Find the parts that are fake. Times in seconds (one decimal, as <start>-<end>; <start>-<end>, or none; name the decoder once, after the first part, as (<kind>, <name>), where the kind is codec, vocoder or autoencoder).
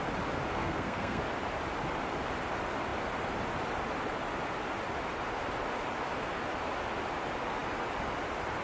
0.5-1.2 (codec, SNAC)